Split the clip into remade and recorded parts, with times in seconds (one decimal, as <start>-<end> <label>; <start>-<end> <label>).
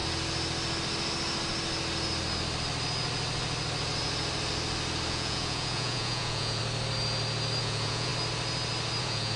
0.0-5.1 recorded; 5.1-6.6 remade; 6.6-7.6 recorded; 7.6-8.1 remade; 8.1-9.0 recorded; 9.0-9.4 remade